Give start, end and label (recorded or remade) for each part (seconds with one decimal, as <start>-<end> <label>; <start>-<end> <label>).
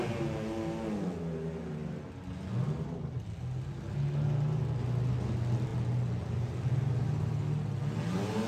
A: 0.0-8.5 recorded